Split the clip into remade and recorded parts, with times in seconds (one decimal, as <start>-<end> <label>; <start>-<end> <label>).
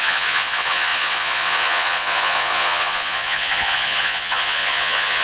0.0-5.2 remade